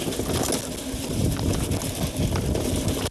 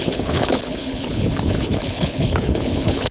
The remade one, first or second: second